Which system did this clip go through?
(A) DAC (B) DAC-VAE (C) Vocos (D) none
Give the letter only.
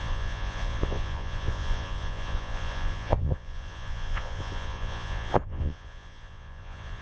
C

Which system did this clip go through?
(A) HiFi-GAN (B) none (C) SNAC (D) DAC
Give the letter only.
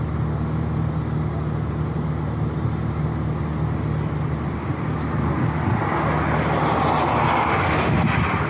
B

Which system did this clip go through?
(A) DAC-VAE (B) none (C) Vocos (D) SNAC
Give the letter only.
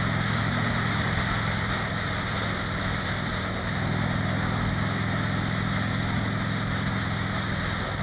B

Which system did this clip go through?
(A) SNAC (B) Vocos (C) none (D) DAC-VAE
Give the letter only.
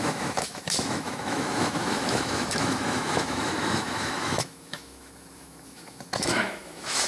D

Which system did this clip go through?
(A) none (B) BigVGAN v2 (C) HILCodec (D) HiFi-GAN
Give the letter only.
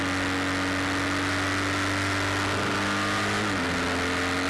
A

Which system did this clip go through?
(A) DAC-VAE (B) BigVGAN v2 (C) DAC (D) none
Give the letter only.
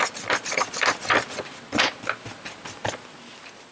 D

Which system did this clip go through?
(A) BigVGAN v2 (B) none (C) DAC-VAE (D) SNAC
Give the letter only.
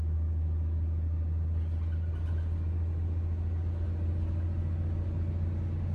B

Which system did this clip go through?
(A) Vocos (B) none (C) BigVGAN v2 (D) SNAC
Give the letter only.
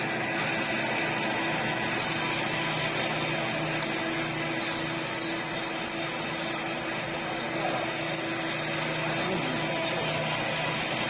B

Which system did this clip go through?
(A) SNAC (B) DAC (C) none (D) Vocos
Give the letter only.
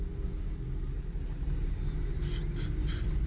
C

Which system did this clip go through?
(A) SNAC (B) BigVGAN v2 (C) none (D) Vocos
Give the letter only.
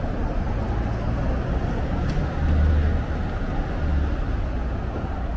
C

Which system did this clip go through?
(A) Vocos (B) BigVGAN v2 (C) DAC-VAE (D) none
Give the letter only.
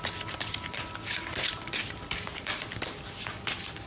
B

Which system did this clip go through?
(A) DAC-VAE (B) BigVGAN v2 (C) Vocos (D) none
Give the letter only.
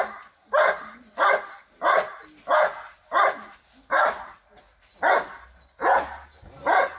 D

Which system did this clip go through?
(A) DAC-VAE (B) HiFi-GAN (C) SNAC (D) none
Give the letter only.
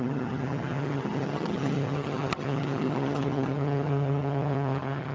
B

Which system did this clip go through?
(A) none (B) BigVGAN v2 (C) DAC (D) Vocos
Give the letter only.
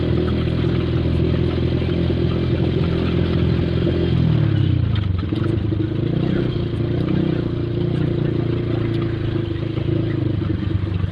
A